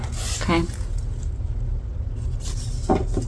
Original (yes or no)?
yes